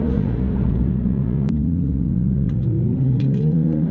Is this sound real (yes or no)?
no